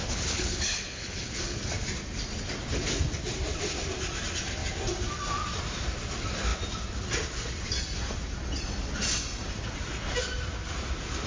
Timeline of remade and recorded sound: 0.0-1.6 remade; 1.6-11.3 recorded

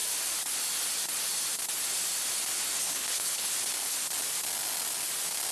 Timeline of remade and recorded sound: 0.0-2.8 recorded; 2.8-3.5 remade; 3.5-5.5 recorded

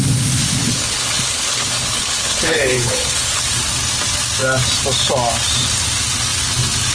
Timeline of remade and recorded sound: 0.0-0.6 recorded; 0.6-3.4 remade; 3.4-6.9 recorded

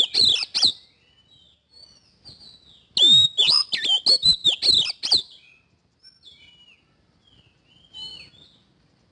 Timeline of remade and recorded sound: 0.0-9.1 recorded